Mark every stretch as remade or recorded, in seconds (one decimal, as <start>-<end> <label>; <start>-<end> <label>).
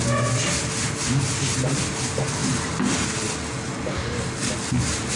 0.0-5.2 recorded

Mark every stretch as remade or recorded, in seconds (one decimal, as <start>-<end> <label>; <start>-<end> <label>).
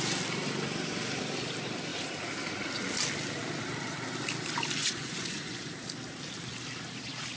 0.0-4.8 recorded; 4.8-5.7 remade; 5.7-7.4 recorded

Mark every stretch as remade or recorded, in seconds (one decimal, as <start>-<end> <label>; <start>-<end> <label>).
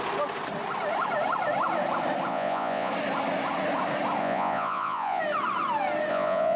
0.0-2.3 recorded; 2.3-2.9 remade; 2.9-4.2 recorded; 4.2-5.2 remade; 5.2-6.1 recorded; 6.1-6.6 remade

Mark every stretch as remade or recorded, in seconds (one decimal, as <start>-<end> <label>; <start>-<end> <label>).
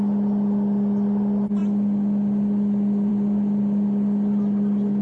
0.0-5.0 recorded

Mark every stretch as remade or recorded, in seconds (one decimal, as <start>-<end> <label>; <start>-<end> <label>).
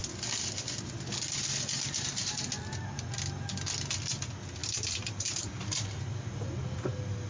0.0-4.6 recorded; 4.6-6.5 remade; 6.5-7.3 recorded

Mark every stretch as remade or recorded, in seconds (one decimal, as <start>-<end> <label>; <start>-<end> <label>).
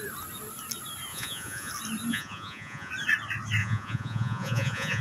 0.0-1.1 recorded; 1.1-1.7 remade; 1.7-2.1 recorded; 2.1-2.9 remade; 2.9-3.6 recorded; 3.6-5.0 remade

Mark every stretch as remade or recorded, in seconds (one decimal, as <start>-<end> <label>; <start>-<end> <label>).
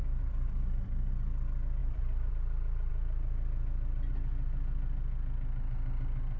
0.0-1.1 remade; 1.1-1.8 recorded; 1.8-2.3 remade; 2.3-6.4 recorded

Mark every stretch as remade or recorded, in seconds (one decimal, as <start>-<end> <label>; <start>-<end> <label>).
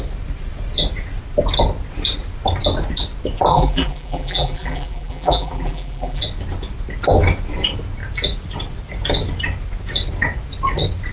0.0-3.5 recorded; 3.5-6.2 remade; 6.2-11.1 recorded